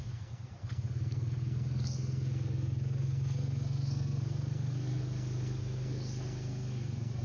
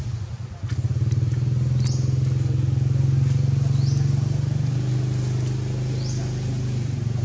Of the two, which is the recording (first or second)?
second